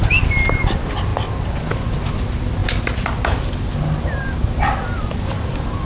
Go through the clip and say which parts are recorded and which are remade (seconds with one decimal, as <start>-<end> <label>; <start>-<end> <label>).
0.0-5.9 recorded